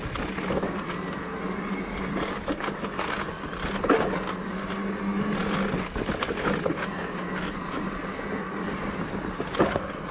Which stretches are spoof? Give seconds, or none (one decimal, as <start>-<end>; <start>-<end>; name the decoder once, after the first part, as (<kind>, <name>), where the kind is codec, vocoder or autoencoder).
none